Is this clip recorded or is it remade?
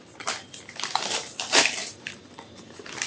remade